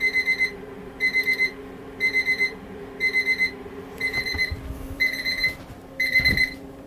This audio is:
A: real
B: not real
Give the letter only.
B